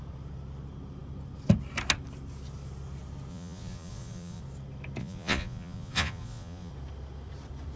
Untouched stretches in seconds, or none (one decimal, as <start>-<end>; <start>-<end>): 0.0-3.3; 4.4-5.0; 6.7-7.8